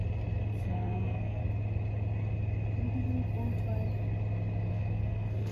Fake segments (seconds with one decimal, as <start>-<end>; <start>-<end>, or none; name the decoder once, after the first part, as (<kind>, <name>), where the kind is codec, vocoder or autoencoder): 0.6-1.4 (codec, SNAC); 4.7-5.5